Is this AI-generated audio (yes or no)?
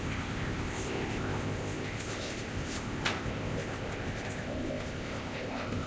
yes